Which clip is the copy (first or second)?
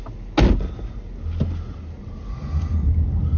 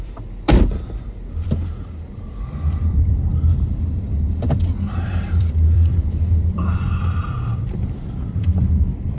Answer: second